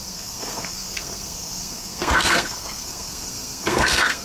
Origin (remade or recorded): remade